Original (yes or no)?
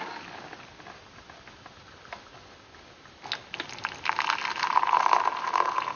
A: yes